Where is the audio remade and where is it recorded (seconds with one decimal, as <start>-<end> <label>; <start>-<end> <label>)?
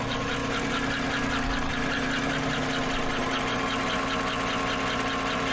0.0-5.5 recorded